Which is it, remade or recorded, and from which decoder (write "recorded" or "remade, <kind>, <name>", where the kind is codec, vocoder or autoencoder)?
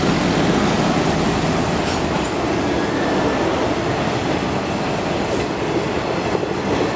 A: recorded